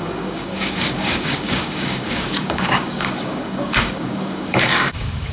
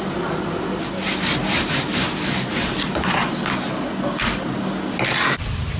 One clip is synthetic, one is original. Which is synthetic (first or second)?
first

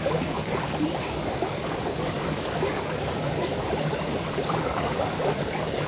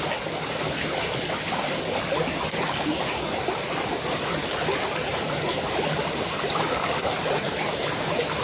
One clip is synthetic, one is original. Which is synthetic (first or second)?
first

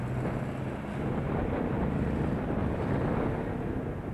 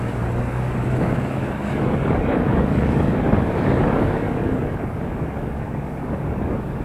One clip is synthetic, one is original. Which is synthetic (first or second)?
second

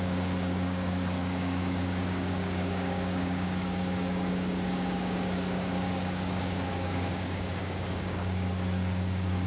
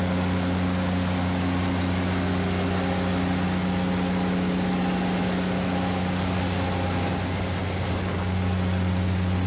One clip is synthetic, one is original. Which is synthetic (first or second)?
first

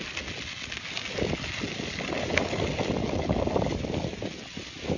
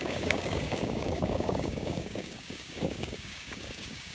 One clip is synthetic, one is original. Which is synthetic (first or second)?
second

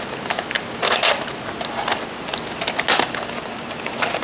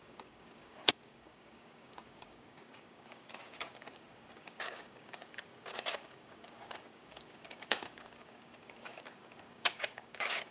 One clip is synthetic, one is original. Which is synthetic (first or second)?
second